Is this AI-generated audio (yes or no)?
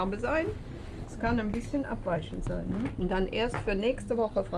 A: no